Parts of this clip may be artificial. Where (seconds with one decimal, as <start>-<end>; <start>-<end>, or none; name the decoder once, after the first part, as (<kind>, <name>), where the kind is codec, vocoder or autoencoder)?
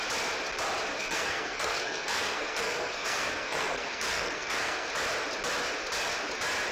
0.9-4.9 (codec, SNAC)